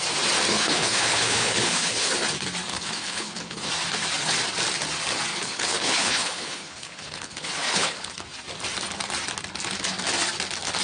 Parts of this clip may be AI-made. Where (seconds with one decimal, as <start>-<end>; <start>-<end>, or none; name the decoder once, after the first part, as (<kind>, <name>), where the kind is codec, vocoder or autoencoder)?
0.5-2.1 (codec, HILCodec); 2.7-3.7; 5.3-8.1